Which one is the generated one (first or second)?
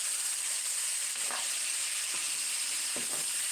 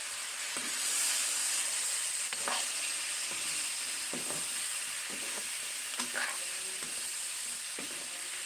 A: first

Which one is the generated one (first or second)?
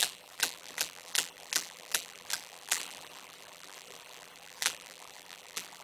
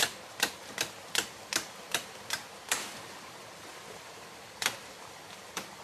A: first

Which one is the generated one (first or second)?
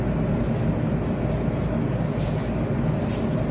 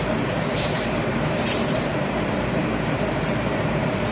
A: second